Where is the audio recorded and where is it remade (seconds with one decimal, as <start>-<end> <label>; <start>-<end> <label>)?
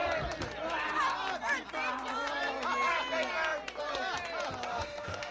0.0-4.7 recorded; 4.7-5.3 remade